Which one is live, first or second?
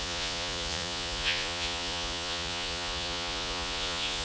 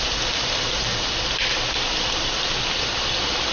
second